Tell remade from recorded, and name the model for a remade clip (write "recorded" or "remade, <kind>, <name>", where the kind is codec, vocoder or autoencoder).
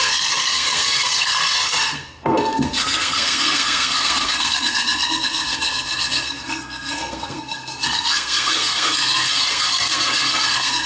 remade, codec, SNAC